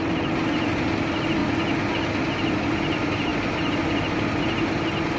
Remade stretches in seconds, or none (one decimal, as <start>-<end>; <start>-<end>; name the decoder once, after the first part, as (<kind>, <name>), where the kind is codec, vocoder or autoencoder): none